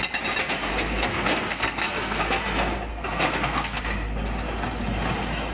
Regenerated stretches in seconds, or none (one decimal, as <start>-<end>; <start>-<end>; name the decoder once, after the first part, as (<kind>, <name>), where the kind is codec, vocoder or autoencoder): 0.7-2.4 (codec, SNAC); 2.9-3.8